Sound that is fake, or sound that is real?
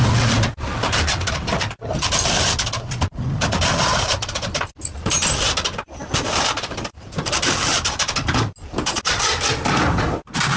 real